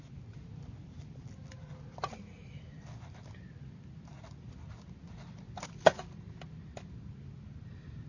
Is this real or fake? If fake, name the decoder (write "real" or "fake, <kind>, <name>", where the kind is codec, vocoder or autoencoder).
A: real